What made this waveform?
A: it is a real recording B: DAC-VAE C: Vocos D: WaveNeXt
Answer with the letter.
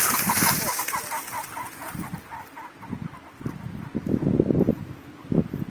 A